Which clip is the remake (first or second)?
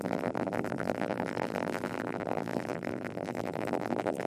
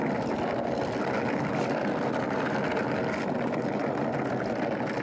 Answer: first